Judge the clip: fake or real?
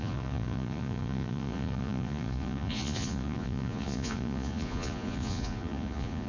fake